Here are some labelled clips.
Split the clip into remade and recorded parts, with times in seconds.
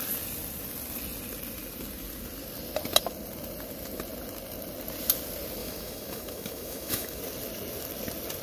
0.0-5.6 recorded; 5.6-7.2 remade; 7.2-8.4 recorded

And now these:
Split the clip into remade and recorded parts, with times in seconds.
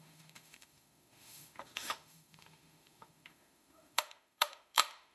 0.0-5.1 remade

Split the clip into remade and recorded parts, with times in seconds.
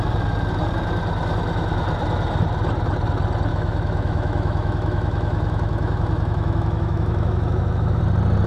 0.0-3.5 recorded; 3.5-8.0 remade; 8.0-8.5 recorded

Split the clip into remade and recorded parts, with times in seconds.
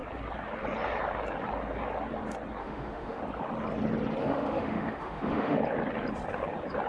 0.0-2.6 recorded; 2.6-3.2 remade; 3.2-4.2 recorded; 4.2-5.6 remade; 5.6-6.9 recorded